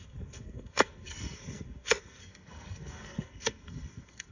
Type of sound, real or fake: fake